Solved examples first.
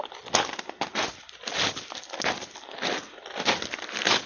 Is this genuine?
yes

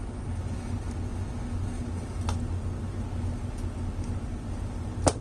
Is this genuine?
yes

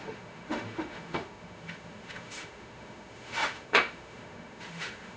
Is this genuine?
no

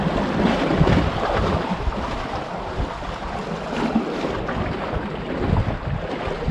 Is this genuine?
yes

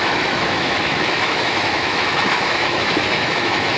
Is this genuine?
no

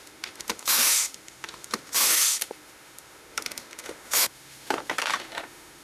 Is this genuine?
no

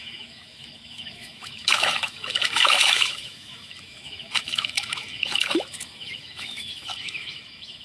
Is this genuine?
no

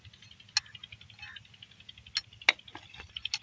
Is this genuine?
yes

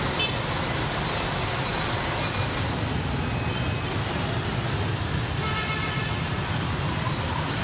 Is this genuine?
yes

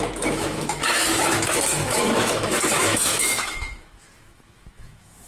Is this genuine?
no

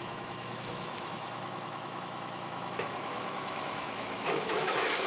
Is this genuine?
no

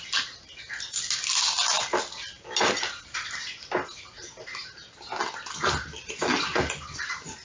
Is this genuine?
yes